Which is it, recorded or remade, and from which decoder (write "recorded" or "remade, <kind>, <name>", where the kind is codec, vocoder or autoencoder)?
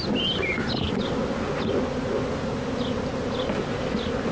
recorded